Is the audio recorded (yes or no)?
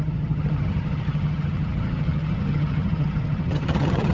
no